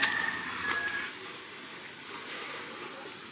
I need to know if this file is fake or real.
real